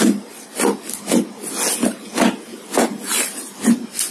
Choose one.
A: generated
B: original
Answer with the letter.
B